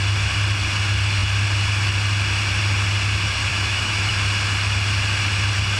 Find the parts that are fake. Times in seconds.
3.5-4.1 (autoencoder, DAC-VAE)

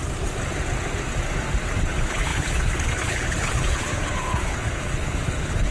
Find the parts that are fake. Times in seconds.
1.8-5.7 (codec, HILCodec)

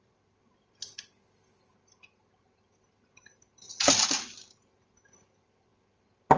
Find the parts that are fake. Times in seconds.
none

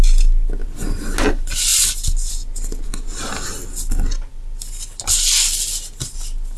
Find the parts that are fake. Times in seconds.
none

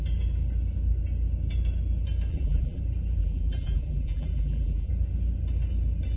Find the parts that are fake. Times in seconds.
2.3-2.8 (vocoder, BigVGAN v2); 3.2-4.9